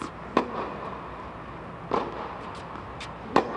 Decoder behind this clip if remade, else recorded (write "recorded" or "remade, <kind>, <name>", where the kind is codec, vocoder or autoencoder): recorded